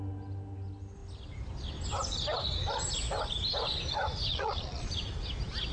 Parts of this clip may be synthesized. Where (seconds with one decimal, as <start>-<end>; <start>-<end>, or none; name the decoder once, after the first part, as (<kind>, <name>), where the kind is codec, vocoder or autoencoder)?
4.3-4.9 (vocoder, Vocos)